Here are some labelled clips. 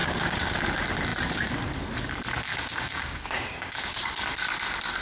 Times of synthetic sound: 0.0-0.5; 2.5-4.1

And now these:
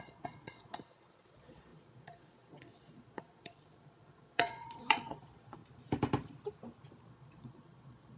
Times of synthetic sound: 0.0-5.6; 7.1-8.2